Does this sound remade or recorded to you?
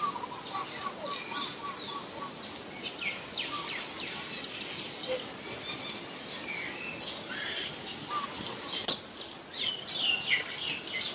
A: recorded